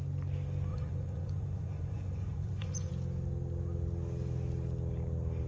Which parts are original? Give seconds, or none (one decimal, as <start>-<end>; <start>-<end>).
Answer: 0.0-0.7; 2.9-5.5